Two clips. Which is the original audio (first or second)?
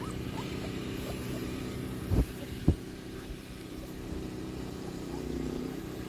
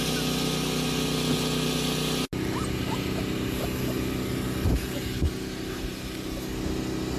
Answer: second